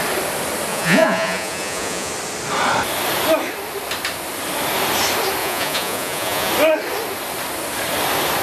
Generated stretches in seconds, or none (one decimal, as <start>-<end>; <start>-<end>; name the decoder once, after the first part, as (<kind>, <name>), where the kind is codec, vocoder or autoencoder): 0.7-2.1 (vocoder, Vocos); 5.4-6.5